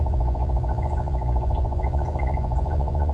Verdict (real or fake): fake